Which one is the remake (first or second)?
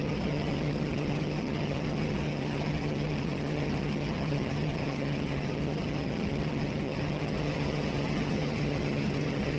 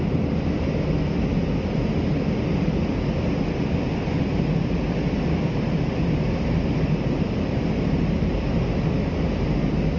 first